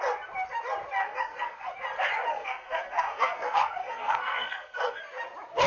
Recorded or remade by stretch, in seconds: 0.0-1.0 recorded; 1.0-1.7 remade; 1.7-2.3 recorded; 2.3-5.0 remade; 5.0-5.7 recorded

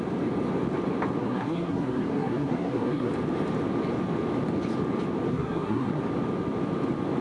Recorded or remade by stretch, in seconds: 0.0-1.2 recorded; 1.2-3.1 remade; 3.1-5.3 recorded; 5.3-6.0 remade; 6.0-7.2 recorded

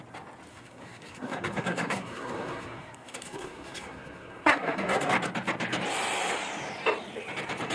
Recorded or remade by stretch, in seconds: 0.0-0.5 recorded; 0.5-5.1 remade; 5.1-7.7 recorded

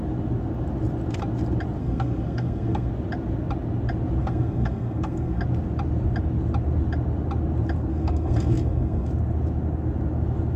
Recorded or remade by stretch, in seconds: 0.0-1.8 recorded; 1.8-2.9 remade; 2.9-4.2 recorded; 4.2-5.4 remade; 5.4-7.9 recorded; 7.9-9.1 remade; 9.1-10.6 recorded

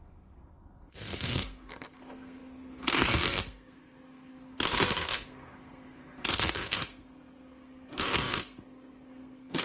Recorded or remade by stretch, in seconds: 0.0-9.6 remade

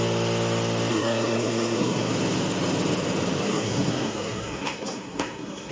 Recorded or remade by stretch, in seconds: 0.0-0.9 recorded; 0.9-2.1 remade; 2.1-3.4 recorded; 3.4-5.7 remade